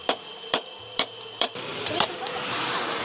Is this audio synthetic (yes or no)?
yes